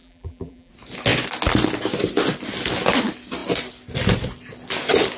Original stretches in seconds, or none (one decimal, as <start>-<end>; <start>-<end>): 0.7-5.2